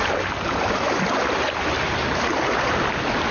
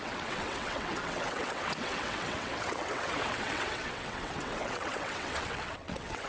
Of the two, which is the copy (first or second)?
second